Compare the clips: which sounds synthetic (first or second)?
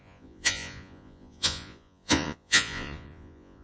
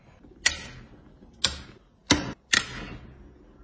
first